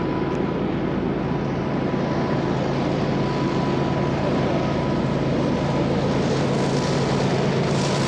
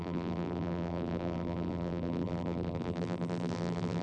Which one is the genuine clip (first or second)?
first